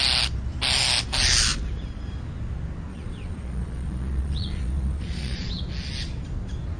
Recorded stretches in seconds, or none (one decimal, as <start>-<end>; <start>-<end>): 0.0-2.9; 5.6-6.8